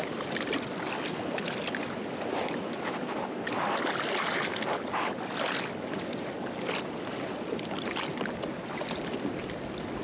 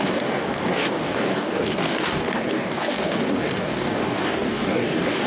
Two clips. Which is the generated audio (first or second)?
second